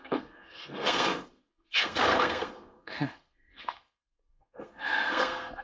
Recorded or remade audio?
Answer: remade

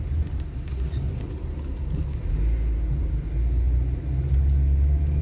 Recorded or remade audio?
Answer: recorded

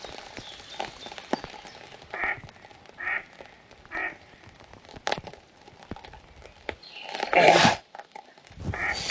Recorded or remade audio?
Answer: recorded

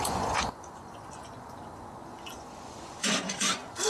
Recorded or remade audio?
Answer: remade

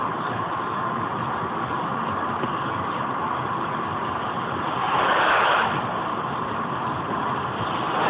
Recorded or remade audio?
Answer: recorded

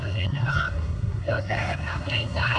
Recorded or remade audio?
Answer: remade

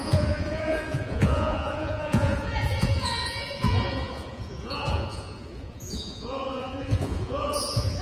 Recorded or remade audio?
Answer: remade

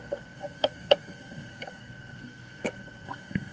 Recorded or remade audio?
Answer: remade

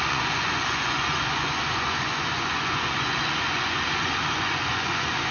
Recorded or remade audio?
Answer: remade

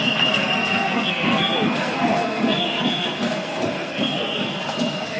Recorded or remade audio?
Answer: remade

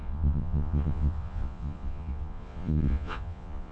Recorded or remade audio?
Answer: remade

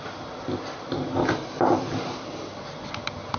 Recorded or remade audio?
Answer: recorded